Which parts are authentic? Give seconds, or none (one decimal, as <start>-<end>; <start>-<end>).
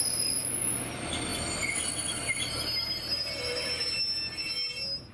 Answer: 0.0-5.1